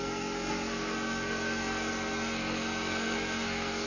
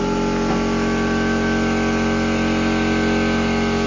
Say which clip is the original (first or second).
second